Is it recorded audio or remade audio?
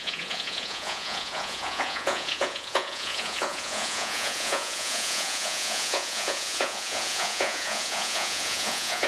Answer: remade